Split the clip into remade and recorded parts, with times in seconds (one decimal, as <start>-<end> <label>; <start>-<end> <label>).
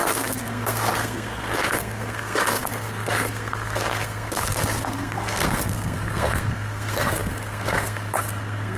0.0-8.8 remade